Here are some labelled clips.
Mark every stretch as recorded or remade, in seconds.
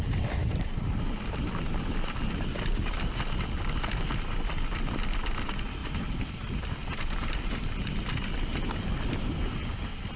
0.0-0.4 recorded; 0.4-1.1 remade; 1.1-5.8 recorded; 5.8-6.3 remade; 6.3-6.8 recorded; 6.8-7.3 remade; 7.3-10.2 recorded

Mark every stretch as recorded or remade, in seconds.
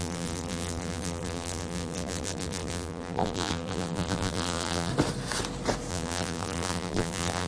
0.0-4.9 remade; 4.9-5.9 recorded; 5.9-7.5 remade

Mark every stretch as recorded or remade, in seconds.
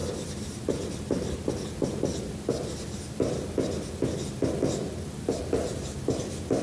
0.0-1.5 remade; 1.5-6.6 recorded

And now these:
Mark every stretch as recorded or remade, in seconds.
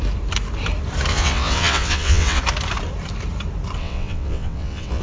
0.0-1.1 recorded; 1.1-2.4 remade; 2.4-3.8 recorded; 3.8-5.0 remade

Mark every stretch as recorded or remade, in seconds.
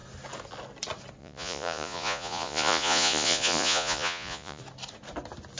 0.0-1.2 recorded; 1.2-4.6 remade; 4.6-5.6 recorded